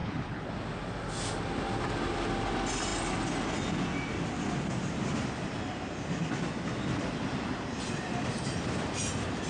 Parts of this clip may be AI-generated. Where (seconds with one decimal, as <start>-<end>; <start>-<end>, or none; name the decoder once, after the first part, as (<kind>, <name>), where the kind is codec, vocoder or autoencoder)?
0.0-0.5 (codec, HILCodec)